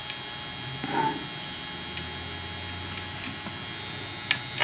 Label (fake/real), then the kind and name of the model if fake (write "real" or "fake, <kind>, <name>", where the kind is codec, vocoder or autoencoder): real